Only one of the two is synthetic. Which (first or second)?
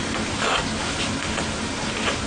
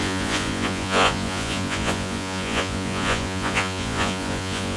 second